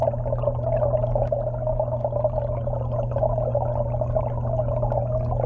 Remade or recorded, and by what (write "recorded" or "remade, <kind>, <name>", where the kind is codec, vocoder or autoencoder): recorded